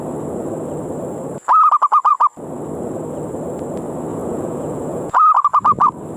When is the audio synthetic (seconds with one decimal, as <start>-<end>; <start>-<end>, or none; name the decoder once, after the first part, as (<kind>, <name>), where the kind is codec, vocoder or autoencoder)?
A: 4.1-5.2 (vocoder, Vocos)